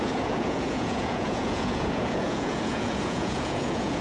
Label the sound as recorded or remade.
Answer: remade